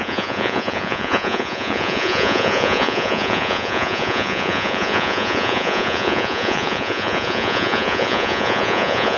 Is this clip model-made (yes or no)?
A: yes